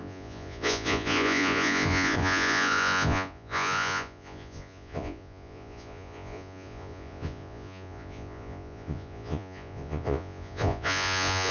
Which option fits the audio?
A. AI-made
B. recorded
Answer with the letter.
A